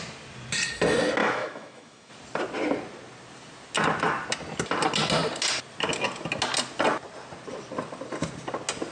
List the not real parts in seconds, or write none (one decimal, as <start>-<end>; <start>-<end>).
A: 1.2-2.1